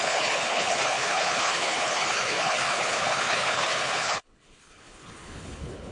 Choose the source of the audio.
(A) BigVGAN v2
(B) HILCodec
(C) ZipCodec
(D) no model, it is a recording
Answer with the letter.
B